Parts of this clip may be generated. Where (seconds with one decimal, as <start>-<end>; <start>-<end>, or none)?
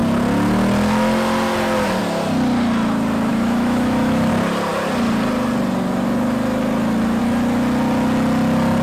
3.3-4.3